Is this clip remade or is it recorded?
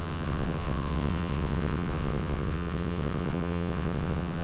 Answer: remade